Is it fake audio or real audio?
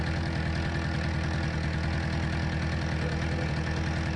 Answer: real